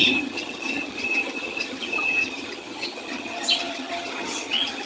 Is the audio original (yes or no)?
no